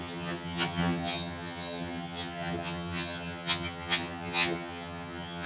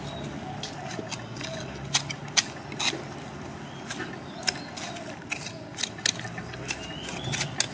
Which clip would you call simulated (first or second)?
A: first